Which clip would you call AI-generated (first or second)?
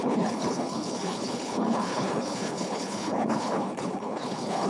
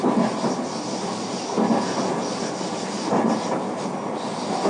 first